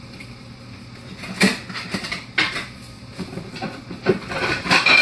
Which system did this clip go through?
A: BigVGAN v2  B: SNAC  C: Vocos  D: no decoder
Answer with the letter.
D